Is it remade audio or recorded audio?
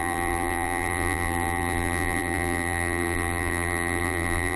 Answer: remade